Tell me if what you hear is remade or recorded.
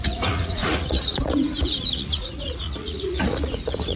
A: remade